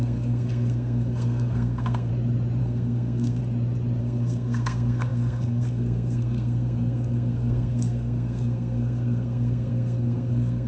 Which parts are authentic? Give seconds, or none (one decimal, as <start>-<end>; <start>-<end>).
2.1-2.6; 3.4-4.0